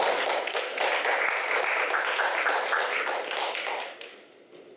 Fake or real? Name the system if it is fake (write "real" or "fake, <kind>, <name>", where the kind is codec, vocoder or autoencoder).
real